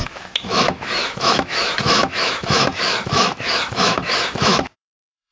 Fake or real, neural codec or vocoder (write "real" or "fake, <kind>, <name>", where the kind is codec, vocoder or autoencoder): fake, autoencoder, DAC-VAE